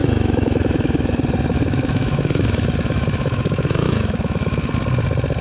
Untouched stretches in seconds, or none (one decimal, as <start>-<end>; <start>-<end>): 1.1-1.5; 4.7-5.4